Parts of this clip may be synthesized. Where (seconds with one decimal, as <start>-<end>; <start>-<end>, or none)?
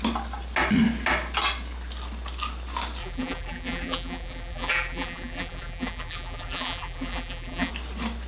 3.0-7.7